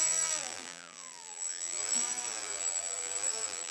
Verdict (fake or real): fake